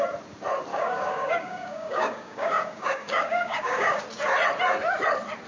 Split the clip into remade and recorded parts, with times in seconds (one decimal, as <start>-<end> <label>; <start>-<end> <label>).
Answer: 0.0-0.7 recorded; 0.7-4.0 remade; 4.0-5.5 recorded